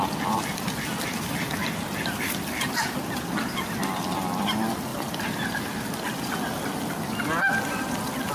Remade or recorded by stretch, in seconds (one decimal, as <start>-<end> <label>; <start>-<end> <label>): 0.0-8.3 recorded